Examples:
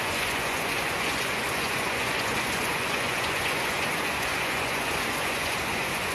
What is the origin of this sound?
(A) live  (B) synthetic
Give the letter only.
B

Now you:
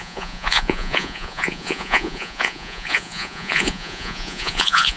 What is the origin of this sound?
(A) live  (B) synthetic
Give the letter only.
B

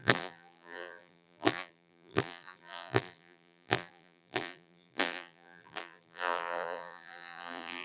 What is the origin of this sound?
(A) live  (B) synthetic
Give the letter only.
B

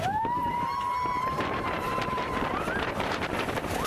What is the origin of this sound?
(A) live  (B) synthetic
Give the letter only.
B